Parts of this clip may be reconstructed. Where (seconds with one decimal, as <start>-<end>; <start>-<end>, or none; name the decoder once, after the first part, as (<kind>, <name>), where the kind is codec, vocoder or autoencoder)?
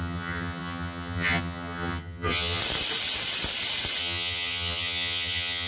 0.0-2.6 (vocoder, HiFi-GAN); 4.0-5.7